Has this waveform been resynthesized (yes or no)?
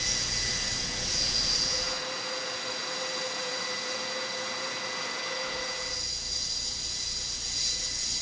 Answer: yes